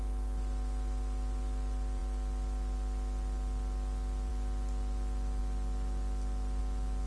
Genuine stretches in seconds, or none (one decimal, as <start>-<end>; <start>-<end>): 0.0-7.1